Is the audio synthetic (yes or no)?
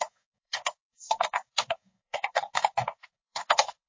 yes